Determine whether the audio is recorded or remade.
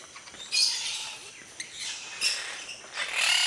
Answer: recorded